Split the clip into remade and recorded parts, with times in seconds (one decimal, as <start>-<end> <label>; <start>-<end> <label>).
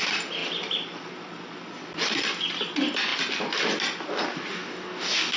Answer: 0.0-4.5 recorded; 4.5-5.4 remade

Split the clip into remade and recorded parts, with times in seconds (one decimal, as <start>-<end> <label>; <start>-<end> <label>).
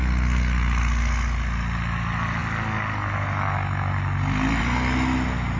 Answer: 0.0-5.6 recorded